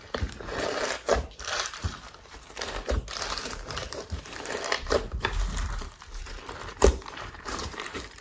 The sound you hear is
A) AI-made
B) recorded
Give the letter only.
A